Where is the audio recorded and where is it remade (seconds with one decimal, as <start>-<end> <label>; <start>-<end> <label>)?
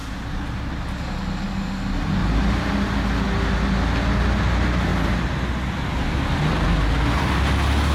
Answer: 0.0-7.9 recorded